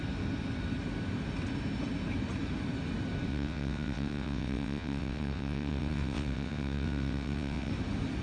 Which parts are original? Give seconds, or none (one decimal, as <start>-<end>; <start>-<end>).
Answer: 0.0-3.3; 7.7-8.2